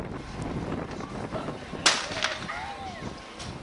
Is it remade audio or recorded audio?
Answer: recorded